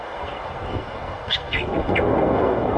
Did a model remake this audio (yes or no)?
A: yes